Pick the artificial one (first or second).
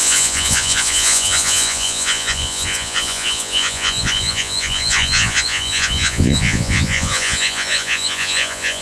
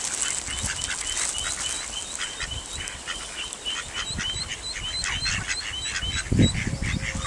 first